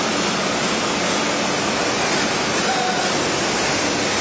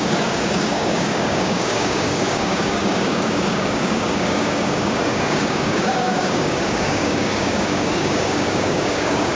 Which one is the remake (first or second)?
second